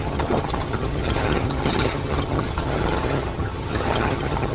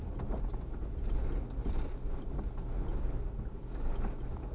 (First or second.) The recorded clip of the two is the second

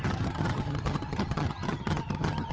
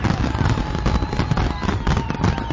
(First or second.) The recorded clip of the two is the second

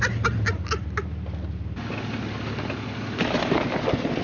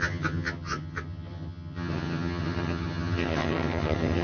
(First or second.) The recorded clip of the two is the first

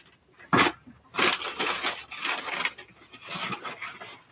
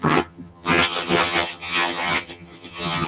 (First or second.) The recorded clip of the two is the first